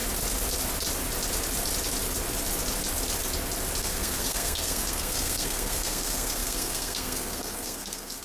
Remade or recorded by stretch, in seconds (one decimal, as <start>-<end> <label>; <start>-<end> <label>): 0.0-3.8 recorded; 3.8-8.2 remade